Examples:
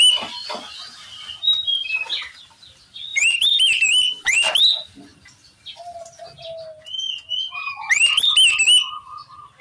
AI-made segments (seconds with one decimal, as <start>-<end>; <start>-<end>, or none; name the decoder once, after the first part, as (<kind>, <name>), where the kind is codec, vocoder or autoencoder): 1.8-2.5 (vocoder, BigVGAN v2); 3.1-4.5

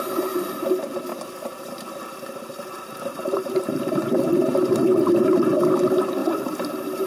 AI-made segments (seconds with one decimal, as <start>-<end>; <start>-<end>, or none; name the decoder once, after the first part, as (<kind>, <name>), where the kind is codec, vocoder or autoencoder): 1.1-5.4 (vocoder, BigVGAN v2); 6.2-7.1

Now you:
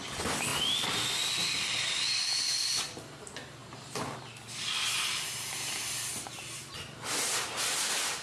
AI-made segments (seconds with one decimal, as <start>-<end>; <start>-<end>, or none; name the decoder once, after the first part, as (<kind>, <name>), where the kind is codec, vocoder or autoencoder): 3.6-4.2 (vocoder, BigVGAN v2)

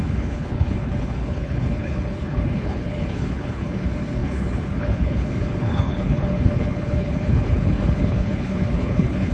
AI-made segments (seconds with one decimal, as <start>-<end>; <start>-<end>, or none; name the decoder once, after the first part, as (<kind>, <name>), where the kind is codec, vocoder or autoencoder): 0.0-9.3 (codec, HILCodec)

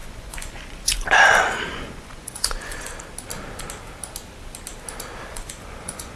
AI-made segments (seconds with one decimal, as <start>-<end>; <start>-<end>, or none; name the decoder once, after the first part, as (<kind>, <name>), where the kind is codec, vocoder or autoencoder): 0.0-2.9 (vocoder, Vocos); 5.3-6.2

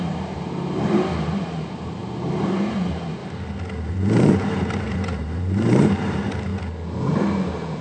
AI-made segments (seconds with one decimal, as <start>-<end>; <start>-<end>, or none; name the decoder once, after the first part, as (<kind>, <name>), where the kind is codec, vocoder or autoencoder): 0.0-3.2 (vocoder, BigVGAN v2); 3.9-6.5; 7.1-7.8